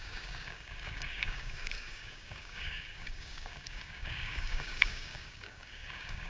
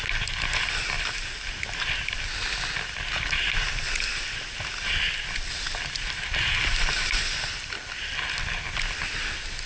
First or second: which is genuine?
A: second